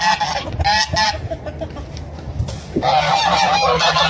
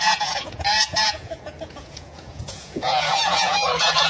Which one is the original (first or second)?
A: first